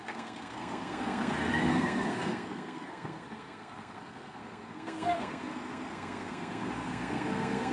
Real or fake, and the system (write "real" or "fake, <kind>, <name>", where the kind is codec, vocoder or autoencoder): fake, codec, SNAC